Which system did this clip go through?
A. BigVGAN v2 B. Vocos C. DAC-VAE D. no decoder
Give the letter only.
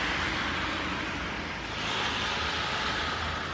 D